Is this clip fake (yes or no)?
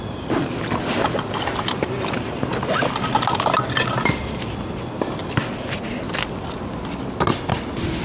no